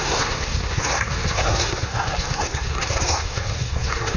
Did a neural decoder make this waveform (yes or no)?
yes